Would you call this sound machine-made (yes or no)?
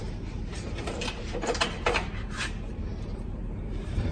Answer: yes